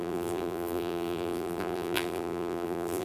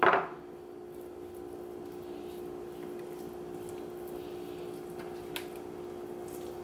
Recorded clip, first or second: second